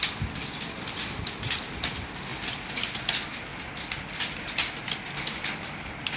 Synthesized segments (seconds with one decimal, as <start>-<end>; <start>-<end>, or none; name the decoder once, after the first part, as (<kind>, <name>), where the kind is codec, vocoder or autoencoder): none